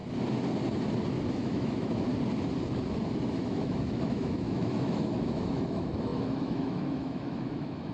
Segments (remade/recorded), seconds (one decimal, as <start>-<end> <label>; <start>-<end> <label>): 0.0-1.3 recorded; 1.3-2.1 remade; 2.1-3.3 recorded; 3.3-7.9 remade